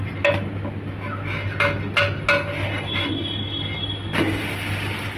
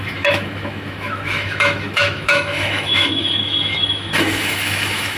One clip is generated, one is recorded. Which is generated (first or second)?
second